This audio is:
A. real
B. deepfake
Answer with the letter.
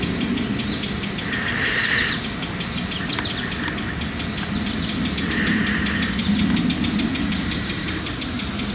A